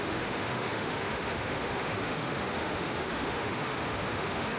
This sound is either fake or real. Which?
fake